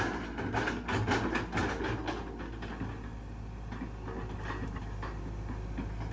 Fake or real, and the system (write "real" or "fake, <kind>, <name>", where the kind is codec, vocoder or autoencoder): real